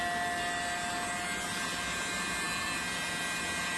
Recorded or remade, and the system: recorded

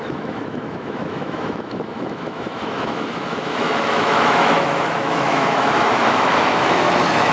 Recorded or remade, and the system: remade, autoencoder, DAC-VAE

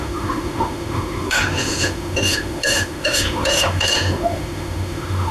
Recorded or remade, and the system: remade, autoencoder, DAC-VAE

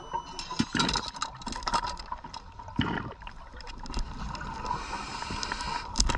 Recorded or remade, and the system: recorded